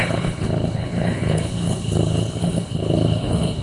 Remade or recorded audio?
remade